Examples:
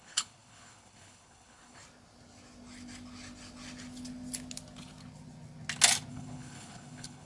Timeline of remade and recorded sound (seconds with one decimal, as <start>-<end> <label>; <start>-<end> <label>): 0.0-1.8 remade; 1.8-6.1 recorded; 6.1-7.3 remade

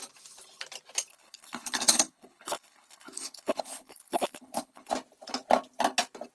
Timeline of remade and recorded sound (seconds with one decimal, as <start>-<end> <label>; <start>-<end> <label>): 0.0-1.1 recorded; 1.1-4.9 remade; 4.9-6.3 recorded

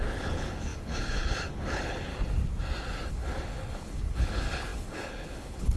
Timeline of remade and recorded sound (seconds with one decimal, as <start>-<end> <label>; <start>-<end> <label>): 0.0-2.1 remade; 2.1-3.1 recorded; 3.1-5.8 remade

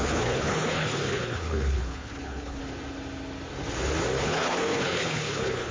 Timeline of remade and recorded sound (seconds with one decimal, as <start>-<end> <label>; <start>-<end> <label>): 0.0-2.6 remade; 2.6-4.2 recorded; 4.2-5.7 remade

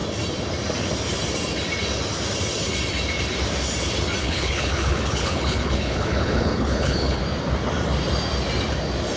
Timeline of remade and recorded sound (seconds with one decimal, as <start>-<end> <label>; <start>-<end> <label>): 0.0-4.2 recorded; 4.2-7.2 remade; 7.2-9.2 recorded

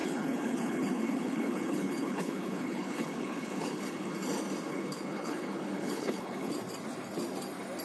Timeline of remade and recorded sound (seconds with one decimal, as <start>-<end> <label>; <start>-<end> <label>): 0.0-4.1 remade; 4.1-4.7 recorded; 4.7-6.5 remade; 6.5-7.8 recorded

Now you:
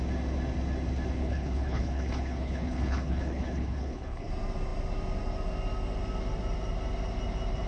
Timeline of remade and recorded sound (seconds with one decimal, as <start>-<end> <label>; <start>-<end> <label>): 0.0-1.2 recorded; 1.2-4.3 remade; 4.3-7.7 recorded